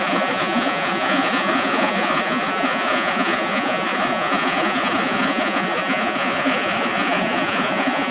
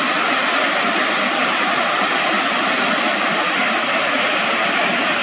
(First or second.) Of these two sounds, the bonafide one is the second